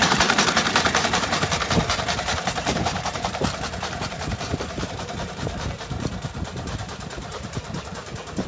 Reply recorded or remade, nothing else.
remade